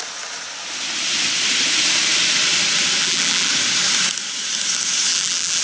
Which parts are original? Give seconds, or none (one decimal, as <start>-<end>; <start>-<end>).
0.0-3.0; 3.5-5.1